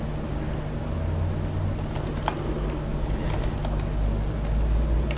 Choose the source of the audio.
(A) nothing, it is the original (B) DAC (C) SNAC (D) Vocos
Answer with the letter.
A